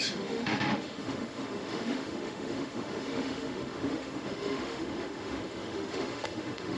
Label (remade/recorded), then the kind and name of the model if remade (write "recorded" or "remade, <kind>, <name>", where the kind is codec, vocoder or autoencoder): remade, autoencoder, DAC-VAE